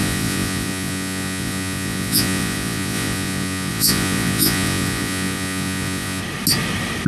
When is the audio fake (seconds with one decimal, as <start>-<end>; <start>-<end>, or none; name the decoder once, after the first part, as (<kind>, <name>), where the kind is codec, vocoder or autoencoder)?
0.0-6.2 (vocoder, Vocos)